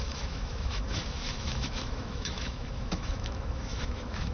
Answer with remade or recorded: remade